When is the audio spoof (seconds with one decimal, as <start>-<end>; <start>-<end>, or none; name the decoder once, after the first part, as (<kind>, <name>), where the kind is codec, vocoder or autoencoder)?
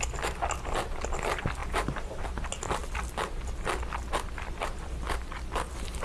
1.6-2.3 (vocoder, BigVGAN v2)